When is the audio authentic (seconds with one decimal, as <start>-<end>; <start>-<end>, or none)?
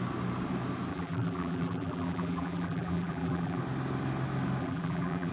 0.0-0.9; 3.6-4.6